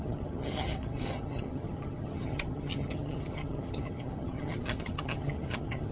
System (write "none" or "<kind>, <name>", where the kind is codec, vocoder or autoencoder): vocoder, HiFi-GAN